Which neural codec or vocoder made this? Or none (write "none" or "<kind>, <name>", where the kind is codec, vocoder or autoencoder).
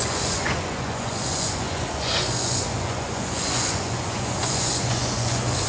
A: vocoder, Vocos